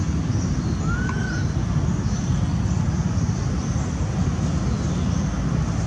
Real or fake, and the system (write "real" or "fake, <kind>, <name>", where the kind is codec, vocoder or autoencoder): real